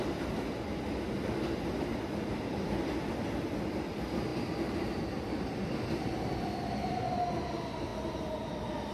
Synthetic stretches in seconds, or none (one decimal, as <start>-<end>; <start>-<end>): none